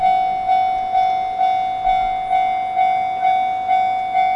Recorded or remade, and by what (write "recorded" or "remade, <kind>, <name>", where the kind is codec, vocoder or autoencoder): recorded